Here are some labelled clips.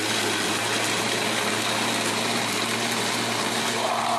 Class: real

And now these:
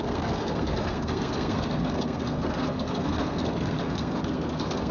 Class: fake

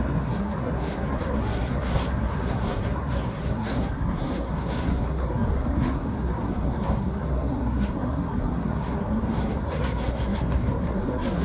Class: fake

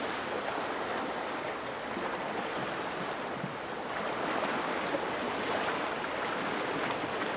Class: real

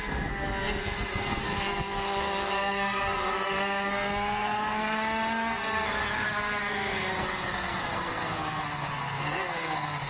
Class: fake